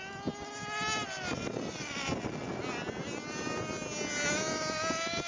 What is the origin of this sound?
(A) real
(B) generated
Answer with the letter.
A